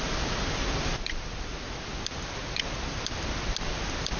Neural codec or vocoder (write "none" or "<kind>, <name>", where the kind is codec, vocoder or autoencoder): none